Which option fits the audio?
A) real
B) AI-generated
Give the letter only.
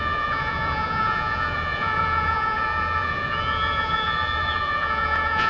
B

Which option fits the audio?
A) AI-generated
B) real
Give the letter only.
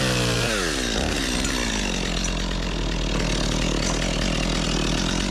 B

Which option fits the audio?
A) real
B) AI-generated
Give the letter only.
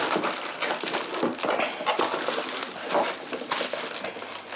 A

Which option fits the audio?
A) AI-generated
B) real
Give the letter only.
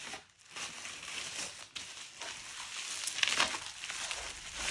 B